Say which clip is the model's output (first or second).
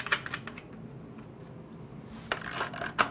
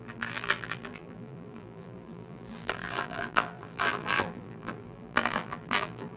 second